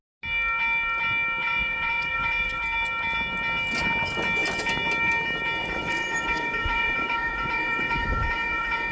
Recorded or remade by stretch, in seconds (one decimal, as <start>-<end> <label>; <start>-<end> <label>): 0.0-1.4 recorded; 1.4-2.6 remade; 2.6-5.6 recorded; 5.6-8.9 remade